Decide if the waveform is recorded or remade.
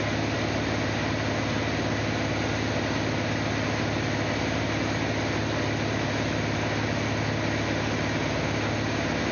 recorded